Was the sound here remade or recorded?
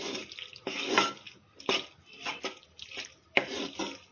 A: recorded